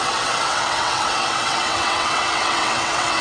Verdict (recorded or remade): remade